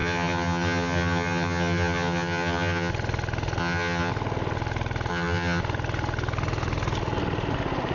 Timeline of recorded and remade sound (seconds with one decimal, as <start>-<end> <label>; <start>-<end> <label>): 0.0-2.9 remade; 2.9-3.6 recorded; 3.6-4.1 remade; 4.1-5.1 recorded; 5.1-5.6 remade; 5.6-7.9 recorded